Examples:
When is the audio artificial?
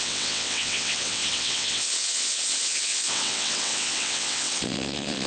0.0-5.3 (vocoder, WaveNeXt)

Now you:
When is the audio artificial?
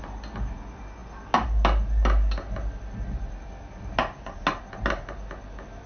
none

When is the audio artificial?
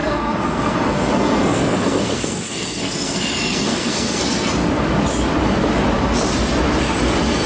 0.0-4.5 (codec, SNAC)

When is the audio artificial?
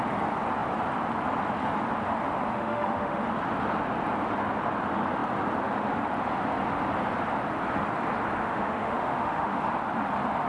2.5-3.2 (autoencoder, DAC-VAE); 8.4-9.6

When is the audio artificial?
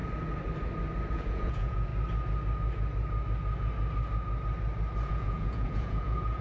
1.1-1.9 (vocoder, Vocos); 5.1-6.4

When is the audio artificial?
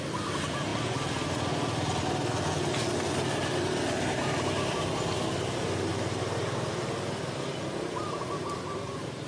none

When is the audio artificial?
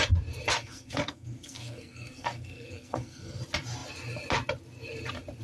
0.6-3.4 (codec, SNAC)